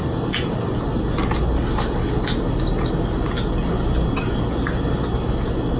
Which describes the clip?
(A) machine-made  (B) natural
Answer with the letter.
B